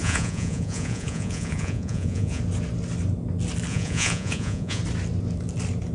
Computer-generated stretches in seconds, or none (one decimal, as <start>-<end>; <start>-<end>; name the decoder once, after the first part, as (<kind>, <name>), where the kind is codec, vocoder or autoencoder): 0.0-2.4 (vocoder, Vocos); 3.7-4.8